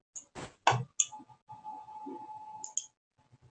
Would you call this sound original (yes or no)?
yes